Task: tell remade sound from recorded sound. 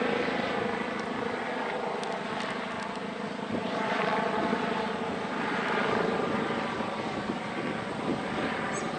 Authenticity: remade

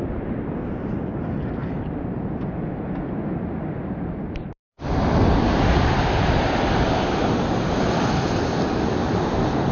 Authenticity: recorded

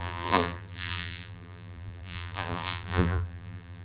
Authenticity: remade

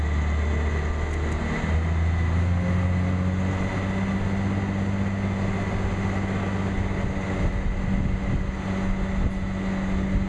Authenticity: recorded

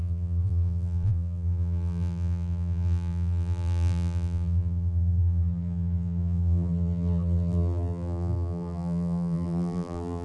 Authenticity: remade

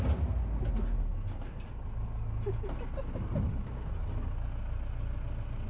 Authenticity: recorded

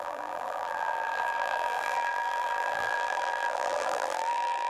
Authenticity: remade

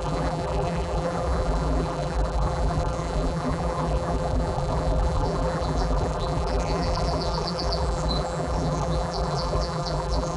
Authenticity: remade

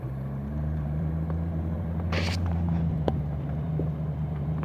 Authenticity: remade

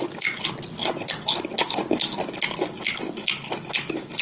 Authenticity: recorded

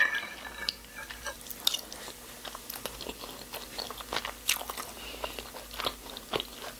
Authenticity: recorded